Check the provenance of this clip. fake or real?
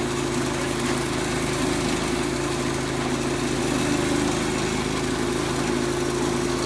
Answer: real